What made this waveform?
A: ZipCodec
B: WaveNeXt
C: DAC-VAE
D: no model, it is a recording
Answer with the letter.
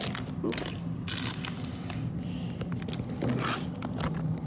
D